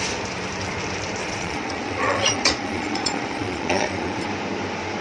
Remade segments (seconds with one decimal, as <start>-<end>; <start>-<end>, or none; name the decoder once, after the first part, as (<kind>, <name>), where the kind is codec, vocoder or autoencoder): 1.2-4.2 (vocoder, Vocos)